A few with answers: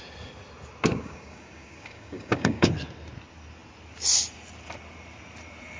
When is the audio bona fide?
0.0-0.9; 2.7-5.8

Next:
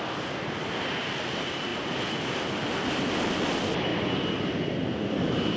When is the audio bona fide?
0.0-5.6

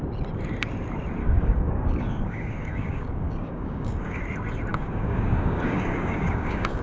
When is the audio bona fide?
0.0-1.2; 4.2-4.7